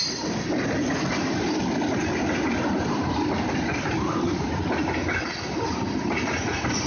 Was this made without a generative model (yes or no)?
yes